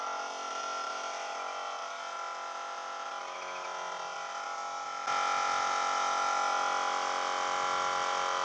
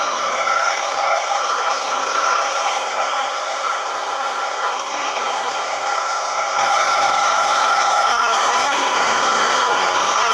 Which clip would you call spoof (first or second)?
second